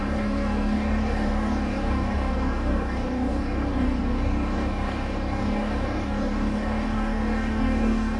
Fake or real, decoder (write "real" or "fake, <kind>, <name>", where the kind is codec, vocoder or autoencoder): fake, codec, DAC